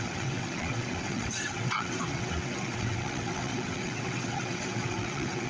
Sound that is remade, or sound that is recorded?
remade